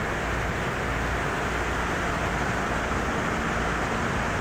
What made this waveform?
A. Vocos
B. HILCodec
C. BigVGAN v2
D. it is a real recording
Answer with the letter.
D